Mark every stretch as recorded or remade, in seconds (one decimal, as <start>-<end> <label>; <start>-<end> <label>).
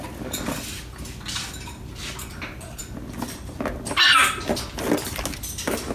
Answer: 0.0-5.9 recorded